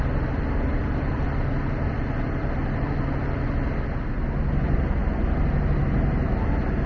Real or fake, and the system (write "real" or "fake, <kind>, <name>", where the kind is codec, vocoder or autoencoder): real